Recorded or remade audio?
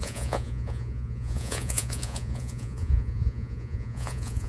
remade